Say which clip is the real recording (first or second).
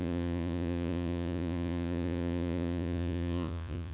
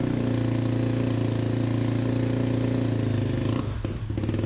second